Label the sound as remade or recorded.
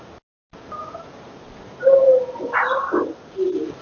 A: recorded